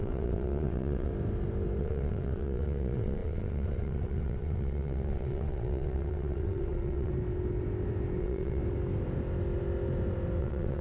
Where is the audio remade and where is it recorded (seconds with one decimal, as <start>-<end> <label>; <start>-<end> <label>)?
0.0-1.1 remade; 1.1-1.8 recorded; 1.8-7.1 remade; 7.1-8.2 recorded; 8.2-8.6 remade; 8.6-10.4 recorded; 10.4-10.8 remade